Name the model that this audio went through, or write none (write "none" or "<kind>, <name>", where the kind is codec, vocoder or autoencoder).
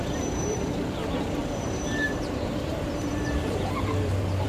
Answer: vocoder, BigVGAN v2